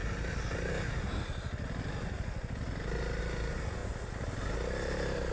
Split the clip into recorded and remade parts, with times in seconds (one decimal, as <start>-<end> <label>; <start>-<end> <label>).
0.0-5.3 recorded